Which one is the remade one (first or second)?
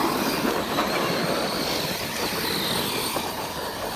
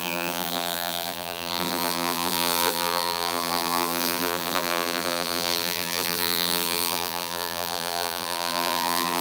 second